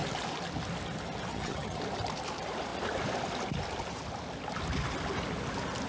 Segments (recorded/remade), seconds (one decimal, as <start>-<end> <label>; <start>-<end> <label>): 0.0-1.3 recorded; 1.3-1.8 remade; 1.8-5.9 recorded